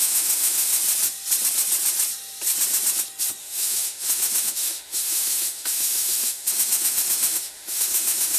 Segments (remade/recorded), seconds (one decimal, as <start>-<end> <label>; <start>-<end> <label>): 0.0-0.8 remade; 0.8-3.4 recorded; 3.4-8.4 remade